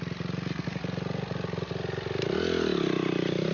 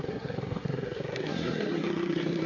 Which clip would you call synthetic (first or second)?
second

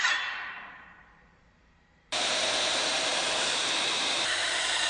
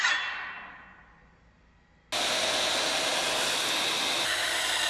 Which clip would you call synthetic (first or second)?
first